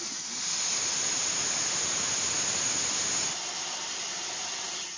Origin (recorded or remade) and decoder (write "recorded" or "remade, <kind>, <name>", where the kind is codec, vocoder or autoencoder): recorded